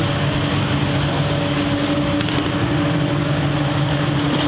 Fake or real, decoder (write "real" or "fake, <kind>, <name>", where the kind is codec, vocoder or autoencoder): real